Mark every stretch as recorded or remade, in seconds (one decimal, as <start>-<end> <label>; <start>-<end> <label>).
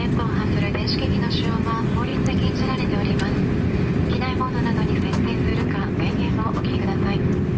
0.0-2.1 recorded; 2.1-4.1 remade; 4.1-7.6 recorded